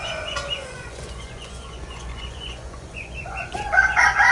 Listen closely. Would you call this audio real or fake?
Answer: fake